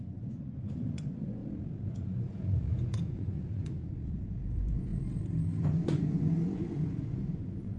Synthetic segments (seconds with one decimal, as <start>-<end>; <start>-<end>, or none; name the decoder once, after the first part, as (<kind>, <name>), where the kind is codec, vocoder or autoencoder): 0.0-1.4 (vocoder, Vocos); 1.9-4.9; 5.6-7.8